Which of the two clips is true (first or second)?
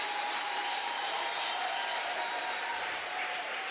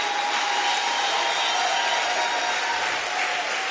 second